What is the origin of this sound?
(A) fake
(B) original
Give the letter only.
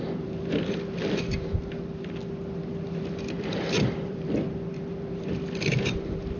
A